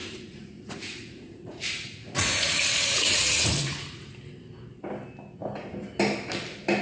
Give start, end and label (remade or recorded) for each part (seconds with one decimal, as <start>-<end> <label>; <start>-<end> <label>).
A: 0.0-4.1 remade; 4.1-6.8 recorded